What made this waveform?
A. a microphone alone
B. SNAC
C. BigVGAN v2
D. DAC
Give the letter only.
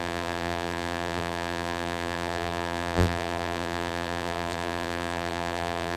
C